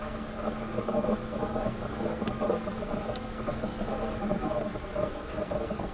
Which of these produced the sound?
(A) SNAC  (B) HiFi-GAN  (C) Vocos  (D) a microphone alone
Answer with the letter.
A